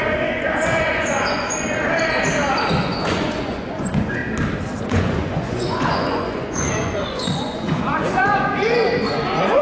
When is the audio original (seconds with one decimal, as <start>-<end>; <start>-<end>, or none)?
1.8-2.8; 4.2-4.8